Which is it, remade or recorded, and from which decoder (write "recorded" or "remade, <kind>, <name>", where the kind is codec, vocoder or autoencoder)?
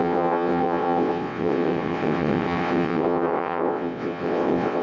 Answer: remade, vocoder, WaveNeXt